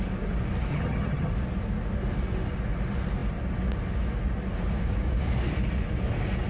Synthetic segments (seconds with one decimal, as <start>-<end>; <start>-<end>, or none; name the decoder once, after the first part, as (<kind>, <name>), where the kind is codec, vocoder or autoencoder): 0.7-1.3 (vocoder, HiFi-GAN)